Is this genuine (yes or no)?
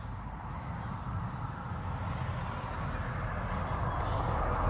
yes